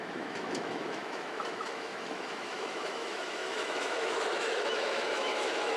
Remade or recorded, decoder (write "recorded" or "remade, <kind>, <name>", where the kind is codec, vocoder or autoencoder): remade, autoencoder, DAC-VAE